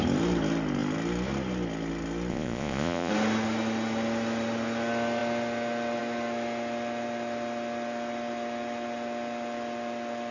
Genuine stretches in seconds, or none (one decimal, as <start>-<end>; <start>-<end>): 0.0-2.3; 3.1-10.3